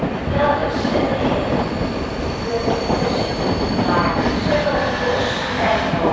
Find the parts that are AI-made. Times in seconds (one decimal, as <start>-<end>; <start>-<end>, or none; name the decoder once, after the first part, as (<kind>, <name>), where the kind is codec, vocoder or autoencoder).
none